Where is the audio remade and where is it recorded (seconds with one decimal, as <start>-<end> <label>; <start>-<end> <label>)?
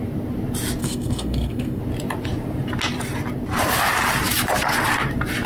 0.0-0.8 recorded; 0.8-1.8 remade; 1.8-5.5 recorded